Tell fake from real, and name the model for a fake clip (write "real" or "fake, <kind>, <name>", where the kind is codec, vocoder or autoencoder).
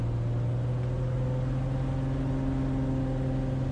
real